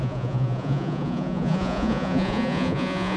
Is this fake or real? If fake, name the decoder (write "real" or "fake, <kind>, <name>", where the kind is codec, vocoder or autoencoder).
fake, vocoder, Vocos